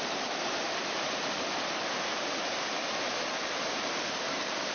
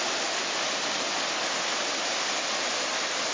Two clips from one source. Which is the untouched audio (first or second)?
second